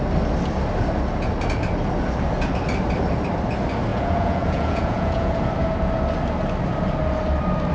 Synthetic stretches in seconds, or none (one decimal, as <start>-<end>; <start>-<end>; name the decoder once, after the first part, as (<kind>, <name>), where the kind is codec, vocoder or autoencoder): 3.9-5.4 (vocoder, Vocos)